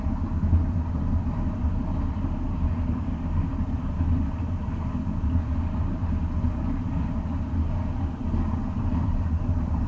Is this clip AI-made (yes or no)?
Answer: no